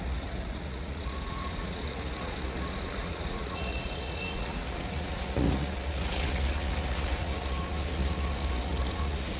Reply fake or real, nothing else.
fake